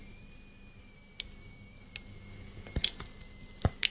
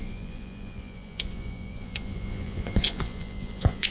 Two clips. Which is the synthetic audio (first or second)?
second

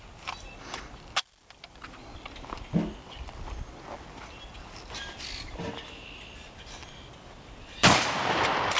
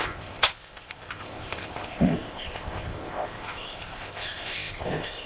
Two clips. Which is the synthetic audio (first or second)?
second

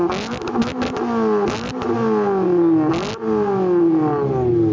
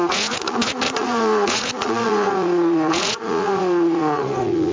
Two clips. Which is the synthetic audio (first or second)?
second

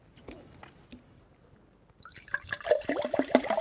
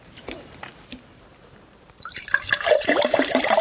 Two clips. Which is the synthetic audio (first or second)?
second